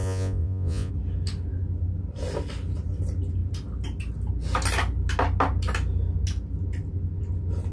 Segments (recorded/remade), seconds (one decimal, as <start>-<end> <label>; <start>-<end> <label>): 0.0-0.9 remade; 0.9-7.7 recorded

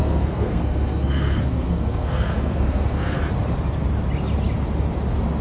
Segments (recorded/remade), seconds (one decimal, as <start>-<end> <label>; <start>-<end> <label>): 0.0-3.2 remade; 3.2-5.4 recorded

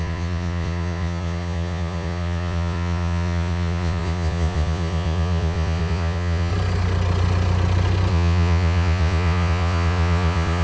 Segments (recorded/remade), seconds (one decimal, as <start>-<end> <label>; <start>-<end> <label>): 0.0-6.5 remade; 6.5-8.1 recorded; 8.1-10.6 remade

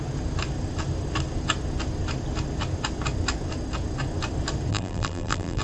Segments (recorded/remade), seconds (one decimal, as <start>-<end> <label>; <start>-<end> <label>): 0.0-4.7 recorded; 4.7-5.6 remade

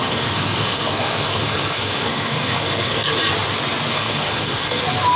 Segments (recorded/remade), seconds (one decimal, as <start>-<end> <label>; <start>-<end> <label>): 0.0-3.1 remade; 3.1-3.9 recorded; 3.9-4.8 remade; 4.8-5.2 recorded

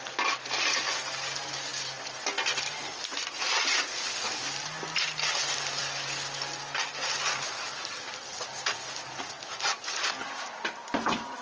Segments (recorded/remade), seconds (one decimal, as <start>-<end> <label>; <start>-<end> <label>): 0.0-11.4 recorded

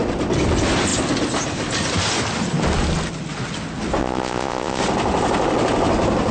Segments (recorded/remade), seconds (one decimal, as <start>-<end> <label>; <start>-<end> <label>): 0.0-4.0 recorded; 4.0-4.8 remade; 4.8-6.3 recorded

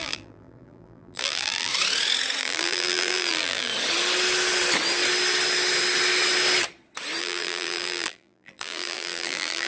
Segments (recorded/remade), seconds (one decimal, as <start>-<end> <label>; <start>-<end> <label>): 0.0-1.7 remade; 1.7-2.4 recorded; 2.4-3.7 remade; 3.7-7.2 recorded; 7.2-9.7 remade